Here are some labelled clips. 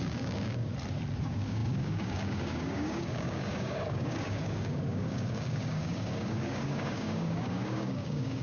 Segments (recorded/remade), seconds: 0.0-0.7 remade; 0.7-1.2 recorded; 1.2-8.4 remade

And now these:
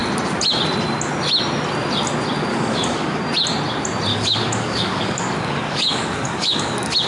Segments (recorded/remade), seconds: 0.0-2.5 recorded; 2.5-3.2 remade; 3.2-4.1 recorded; 4.1-7.1 remade

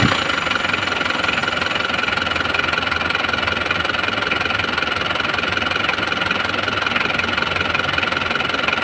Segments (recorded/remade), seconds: 0.0-8.8 recorded